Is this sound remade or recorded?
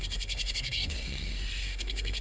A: remade